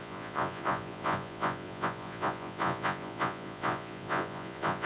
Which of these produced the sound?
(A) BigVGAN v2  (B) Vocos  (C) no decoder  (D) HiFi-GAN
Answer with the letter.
B